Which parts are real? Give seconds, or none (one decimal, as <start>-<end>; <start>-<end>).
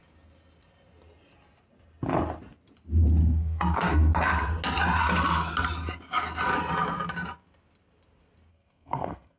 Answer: 0.0-3.2; 4.1-8.5